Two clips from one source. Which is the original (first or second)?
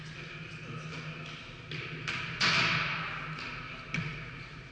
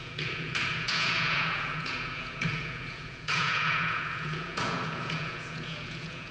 first